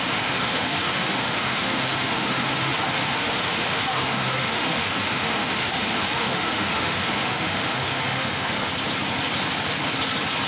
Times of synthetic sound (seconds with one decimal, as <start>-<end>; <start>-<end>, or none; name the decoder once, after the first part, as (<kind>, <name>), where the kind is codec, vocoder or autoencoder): 0.0-8.7 (autoencoder, DAC-VAE)